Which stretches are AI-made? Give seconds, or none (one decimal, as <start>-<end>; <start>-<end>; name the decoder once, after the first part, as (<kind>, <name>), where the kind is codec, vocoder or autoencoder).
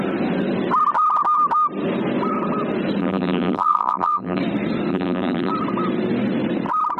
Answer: 3.0-4.4 (vocoder, BigVGAN v2); 4.9-5.5